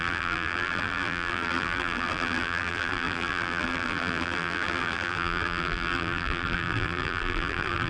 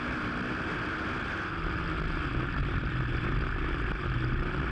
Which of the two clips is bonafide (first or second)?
second